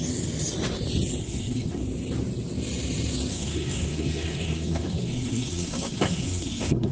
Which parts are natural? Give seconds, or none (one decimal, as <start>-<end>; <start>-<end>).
0.0-1.2; 1.8-3.3

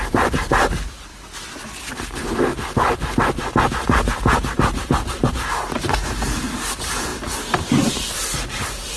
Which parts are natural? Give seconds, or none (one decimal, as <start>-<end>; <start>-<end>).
1.1-1.8; 2.5-3.7

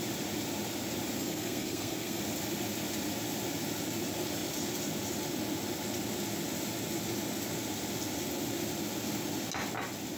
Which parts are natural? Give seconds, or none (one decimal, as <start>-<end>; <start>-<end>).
0.0-1.2; 2.2-10.2

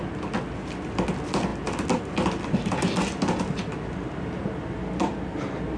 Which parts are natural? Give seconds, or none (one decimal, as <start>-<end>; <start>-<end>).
0.0-4.4